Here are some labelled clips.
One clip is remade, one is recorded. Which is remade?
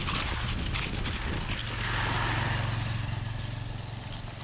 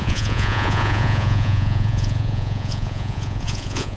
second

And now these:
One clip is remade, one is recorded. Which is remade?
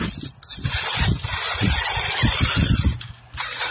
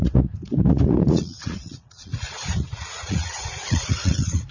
second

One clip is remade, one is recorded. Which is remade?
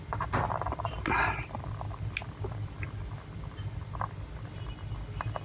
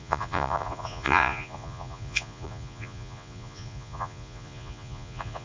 second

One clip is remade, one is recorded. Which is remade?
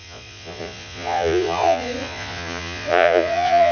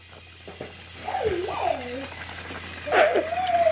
first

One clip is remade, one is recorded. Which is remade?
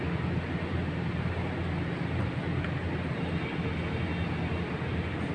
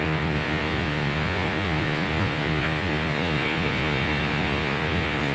second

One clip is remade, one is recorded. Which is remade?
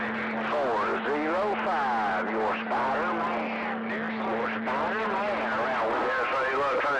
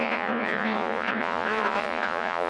second